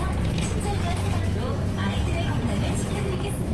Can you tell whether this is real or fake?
real